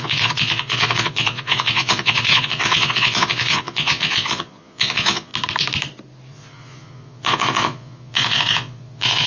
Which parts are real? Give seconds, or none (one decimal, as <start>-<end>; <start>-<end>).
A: 5.3-6.3